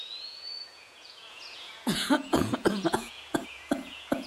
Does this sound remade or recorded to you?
remade